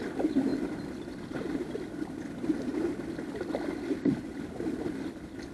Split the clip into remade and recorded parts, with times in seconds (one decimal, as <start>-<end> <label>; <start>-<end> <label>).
0.0-5.5 recorded